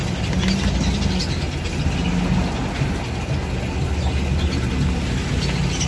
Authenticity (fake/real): real